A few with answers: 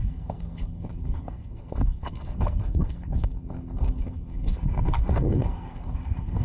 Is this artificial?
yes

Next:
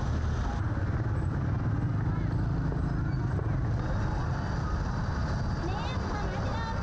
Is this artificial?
no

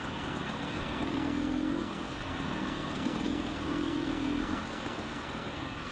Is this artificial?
yes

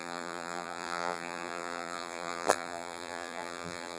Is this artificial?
yes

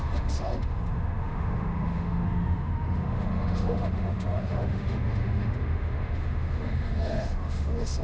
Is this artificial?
yes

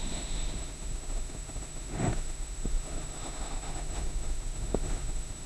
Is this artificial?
yes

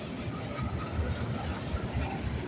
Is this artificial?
no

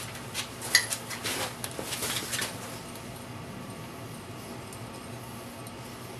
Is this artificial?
no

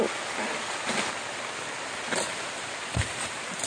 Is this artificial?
no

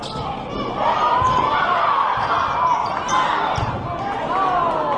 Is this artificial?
no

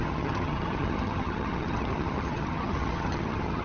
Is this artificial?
yes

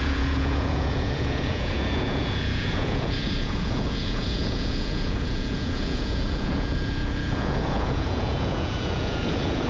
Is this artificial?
yes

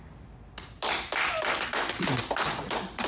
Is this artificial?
no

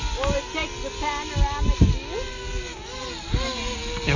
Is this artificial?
no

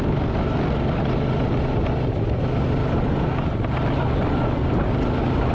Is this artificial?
no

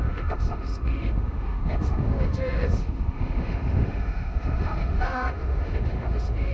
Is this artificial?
yes